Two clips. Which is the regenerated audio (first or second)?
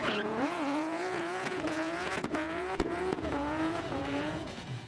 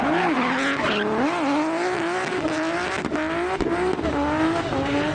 first